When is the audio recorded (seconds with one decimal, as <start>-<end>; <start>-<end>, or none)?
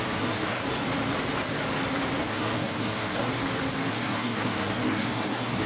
0.6-2.2; 3.3-3.9